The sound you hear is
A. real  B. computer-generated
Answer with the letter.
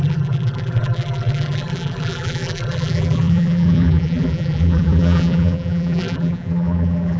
B